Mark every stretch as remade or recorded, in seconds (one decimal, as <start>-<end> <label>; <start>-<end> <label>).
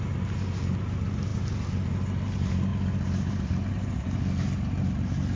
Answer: 0.0-5.4 recorded